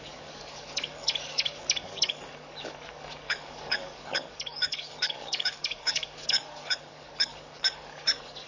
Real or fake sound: fake